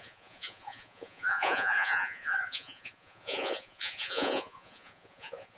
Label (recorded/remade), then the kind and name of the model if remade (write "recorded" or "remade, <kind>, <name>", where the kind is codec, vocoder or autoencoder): remade, vocoder, Vocos